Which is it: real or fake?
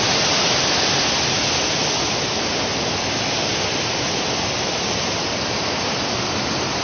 real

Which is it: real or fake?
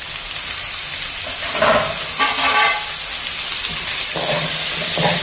real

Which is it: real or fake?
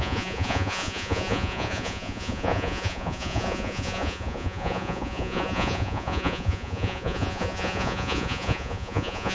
fake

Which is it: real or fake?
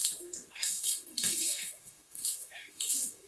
fake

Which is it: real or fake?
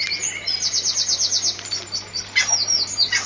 real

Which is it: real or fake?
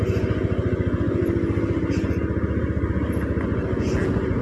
real